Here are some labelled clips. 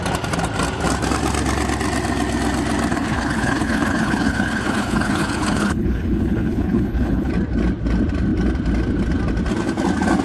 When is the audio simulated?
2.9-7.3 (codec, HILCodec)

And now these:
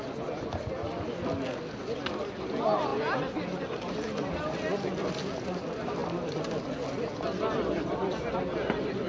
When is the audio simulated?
none

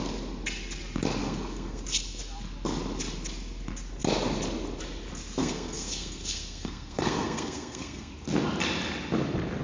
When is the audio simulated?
1.2-1.8 (codec, SNAC); 5.4-8.1

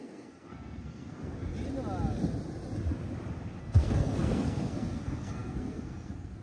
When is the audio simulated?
0.0-1.5 (codec, SNAC); 3.6-6.4